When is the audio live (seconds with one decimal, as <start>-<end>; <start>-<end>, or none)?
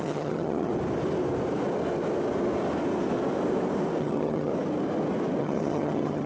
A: 0.7-4.0; 4.5-5.4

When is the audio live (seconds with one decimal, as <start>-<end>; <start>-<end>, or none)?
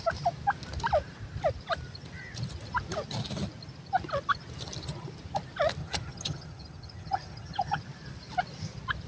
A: 0.0-5.8; 7.8-9.1